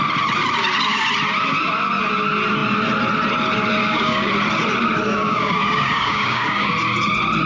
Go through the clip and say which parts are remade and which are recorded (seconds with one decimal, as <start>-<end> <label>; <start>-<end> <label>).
0.0-3.8 recorded; 3.8-4.3 remade; 4.3-5.1 recorded; 5.1-6.7 remade; 6.7-7.5 recorded